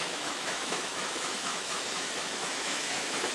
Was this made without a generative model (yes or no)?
no